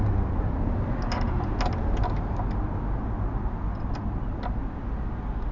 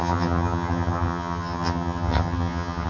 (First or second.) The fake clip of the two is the second